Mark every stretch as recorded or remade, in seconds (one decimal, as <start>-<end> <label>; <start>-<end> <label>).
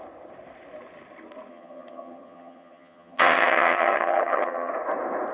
0.0-1.5 recorded; 1.5-4.7 remade; 4.7-5.3 recorded